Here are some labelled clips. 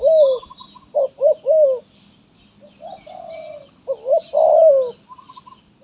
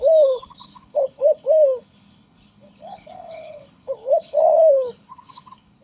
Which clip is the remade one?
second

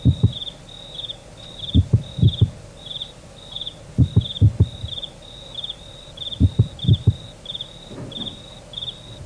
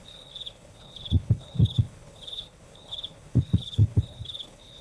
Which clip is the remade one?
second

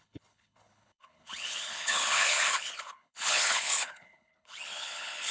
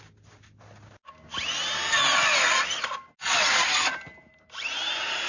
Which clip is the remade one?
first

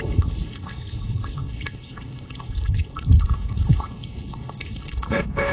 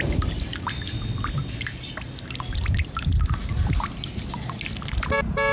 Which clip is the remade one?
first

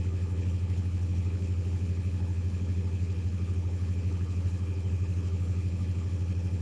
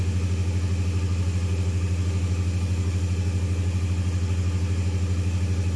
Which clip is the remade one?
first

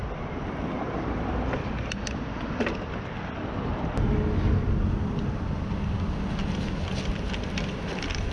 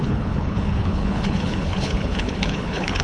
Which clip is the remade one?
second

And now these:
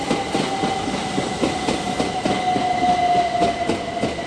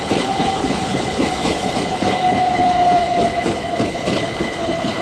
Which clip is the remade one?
second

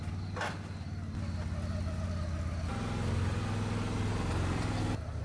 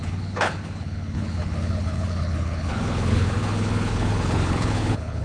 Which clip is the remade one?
second